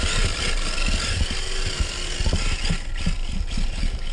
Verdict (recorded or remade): recorded